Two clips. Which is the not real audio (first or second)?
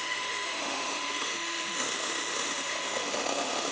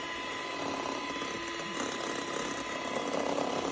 first